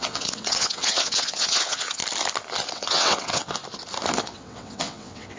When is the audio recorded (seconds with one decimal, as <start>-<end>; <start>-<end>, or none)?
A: 2.0-2.7; 3.6-4.2